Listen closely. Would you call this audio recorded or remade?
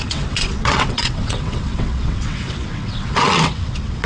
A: remade